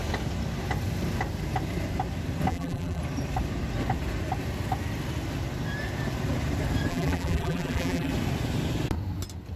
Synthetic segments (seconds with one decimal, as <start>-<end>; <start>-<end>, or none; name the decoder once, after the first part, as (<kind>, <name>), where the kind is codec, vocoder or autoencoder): 2.5-3.0 (vocoder, BigVGAN v2); 6.9-8.1